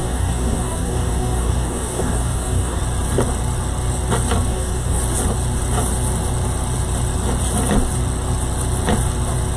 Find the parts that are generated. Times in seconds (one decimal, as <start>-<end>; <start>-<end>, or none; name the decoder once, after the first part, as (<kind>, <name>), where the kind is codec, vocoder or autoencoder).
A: 0.0-2.8 (codec, DAC); 4.5-5.0